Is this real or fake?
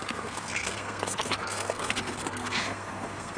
fake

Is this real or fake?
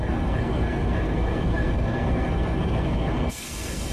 fake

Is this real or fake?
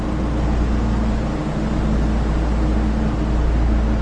real